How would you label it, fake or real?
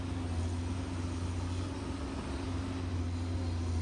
real